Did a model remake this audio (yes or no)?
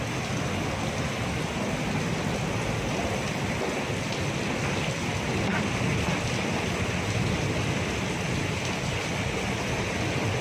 no